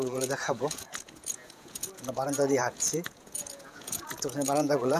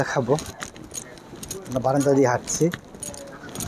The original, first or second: second